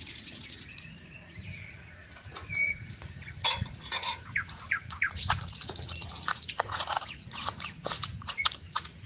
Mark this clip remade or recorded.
remade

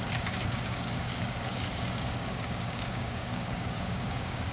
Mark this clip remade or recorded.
remade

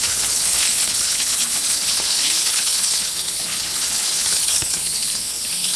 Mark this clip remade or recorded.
remade